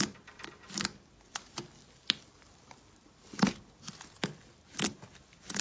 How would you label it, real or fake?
real